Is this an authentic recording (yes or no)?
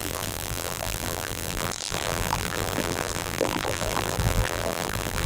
no